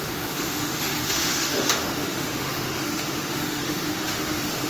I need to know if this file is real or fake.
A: fake